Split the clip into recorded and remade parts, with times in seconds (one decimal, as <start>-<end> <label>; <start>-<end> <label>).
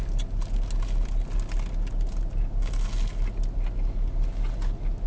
0.0-5.1 recorded